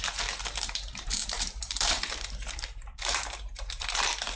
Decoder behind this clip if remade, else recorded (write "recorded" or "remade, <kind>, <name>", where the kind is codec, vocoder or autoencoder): remade, vocoder, BigVGAN v2